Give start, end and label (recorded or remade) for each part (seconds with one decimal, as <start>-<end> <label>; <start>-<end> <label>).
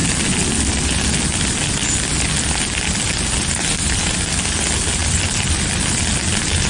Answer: 0.0-6.7 recorded